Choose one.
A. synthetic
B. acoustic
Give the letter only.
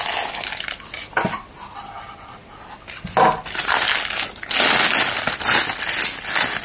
B